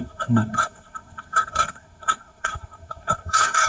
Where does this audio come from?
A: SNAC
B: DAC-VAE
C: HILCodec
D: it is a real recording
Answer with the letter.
A